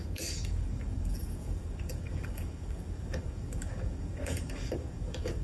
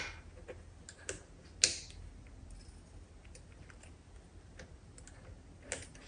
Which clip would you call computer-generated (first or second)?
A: first